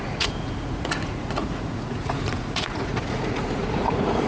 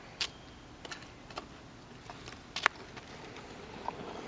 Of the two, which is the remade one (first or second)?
first